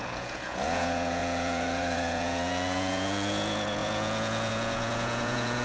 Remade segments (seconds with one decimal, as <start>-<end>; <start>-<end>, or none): 0.0-5.6